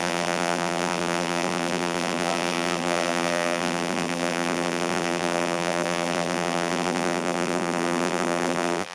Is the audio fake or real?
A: fake